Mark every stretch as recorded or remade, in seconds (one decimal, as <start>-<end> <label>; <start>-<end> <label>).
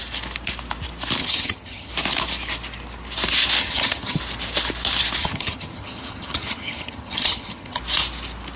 0.0-1.2 recorded; 1.2-1.9 remade; 1.9-3.6 recorded; 3.6-4.2 remade; 4.2-5.2 recorded; 5.2-7.8 remade; 7.8-8.6 recorded